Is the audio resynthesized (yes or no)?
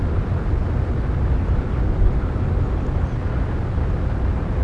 no